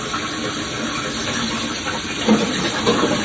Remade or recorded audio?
recorded